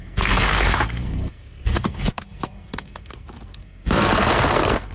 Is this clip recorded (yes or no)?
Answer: no